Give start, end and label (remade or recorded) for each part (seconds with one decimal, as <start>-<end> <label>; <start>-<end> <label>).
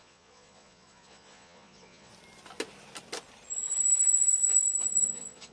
0.0-2.1 remade; 2.1-4.0 recorded; 4.0-5.5 remade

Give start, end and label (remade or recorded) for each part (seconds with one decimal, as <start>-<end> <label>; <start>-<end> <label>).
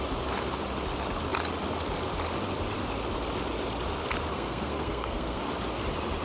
0.0-4.3 recorded; 4.3-5.4 remade; 5.4-6.2 recorded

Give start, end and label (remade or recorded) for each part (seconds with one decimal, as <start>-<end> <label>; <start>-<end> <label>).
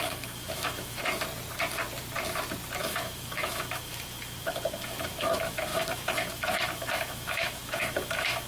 0.0-1.0 remade; 1.0-2.8 recorded; 2.8-8.5 remade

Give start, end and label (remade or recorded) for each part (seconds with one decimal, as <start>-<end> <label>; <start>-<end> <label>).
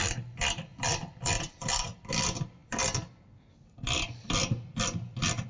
0.0-0.7 recorded; 0.7-2.0 remade; 2.0-5.5 recorded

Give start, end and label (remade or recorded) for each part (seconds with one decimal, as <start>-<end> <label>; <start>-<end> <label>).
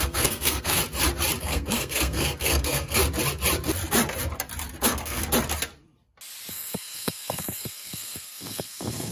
0.0-0.8 remade; 0.8-1.4 recorded; 1.4-3.0 remade; 3.0-4.8 recorded; 4.8-5.2 remade; 5.2-6.5 recorded; 6.5-9.1 remade